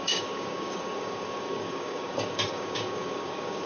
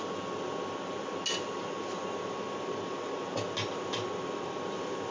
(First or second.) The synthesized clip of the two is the first